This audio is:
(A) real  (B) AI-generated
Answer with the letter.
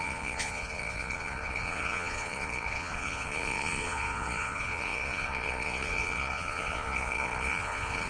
B